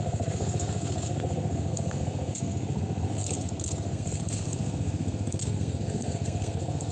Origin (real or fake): fake